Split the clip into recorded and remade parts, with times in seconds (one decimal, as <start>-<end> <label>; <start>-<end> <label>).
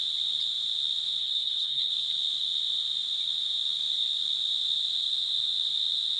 0.0-1.2 recorded; 1.2-1.9 remade; 1.9-6.2 recorded